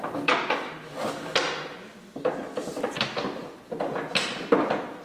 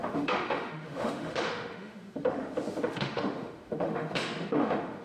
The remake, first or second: second